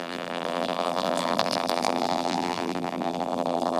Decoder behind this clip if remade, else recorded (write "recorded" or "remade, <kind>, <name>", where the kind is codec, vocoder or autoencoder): remade, vocoder, BigVGAN v2